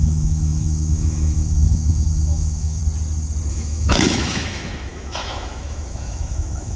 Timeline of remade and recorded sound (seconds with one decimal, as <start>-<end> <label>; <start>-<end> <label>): 0.0-2.8 remade; 2.8-3.5 recorded; 3.5-6.8 remade

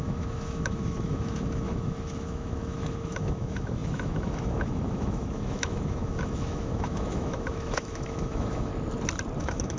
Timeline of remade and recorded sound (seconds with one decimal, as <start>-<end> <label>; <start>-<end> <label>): 0.0-8.7 remade; 8.7-9.4 recorded; 9.4-9.8 remade

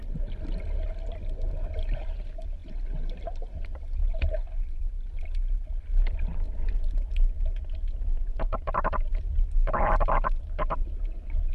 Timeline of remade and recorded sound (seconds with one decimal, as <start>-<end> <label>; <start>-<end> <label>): 0.0-11.5 recorded

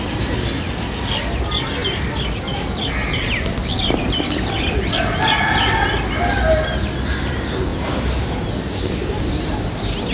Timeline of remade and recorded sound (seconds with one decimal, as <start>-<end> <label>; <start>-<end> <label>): 0.0-10.1 recorded

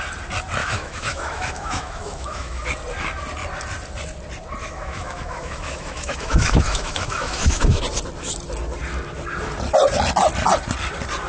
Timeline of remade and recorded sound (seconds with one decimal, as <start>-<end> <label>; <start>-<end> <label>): 0.0-0.6 recorded; 0.6-2.7 remade; 2.7-4.6 recorded; 4.6-7.8 remade; 7.8-11.3 recorded

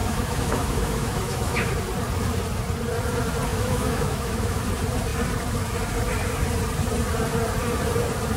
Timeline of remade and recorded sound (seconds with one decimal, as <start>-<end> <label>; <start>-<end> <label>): 0.0-1.7 remade; 1.7-3.5 recorded; 3.5-4.6 remade; 4.6-8.4 recorded

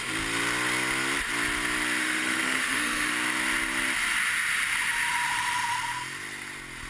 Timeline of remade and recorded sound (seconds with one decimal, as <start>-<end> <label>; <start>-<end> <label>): 0.0-2.0 recorded; 2.0-3.1 remade; 3.1-6.9 recorded